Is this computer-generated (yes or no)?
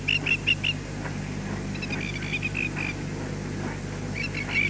no